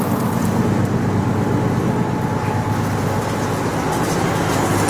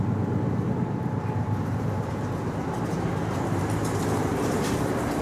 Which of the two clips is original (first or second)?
first